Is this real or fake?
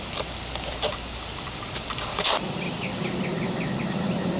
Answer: real